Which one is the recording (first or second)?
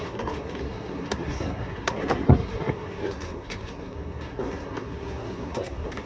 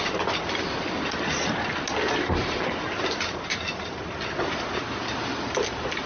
second